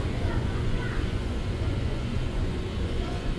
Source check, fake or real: fake